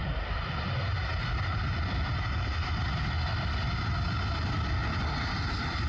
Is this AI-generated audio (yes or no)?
no